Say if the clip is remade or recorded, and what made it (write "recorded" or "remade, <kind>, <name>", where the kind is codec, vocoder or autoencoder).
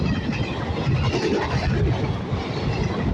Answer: recorded